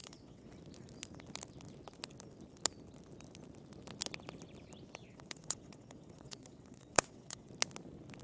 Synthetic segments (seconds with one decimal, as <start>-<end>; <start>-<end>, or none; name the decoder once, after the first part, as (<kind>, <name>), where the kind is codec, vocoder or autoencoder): 0.0-0.5 (vocoder, WaveNeXt); 5.0-7.5